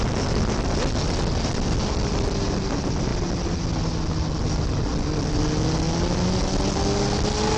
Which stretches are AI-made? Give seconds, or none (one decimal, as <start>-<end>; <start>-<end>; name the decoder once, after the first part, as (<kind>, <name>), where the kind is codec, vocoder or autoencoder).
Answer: none